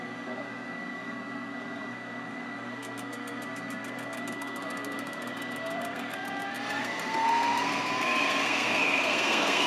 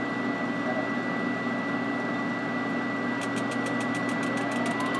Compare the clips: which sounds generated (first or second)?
first